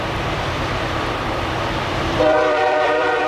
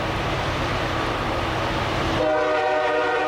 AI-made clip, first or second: first